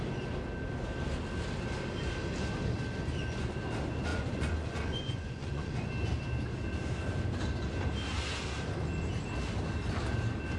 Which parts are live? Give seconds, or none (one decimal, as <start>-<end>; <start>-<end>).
0.0-4.1; 5.9-10.6